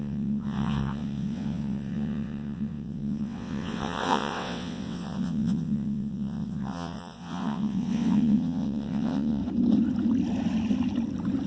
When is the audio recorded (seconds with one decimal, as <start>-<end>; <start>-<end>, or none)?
9.4-11.5